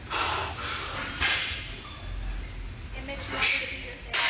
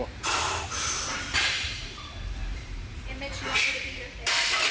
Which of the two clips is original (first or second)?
first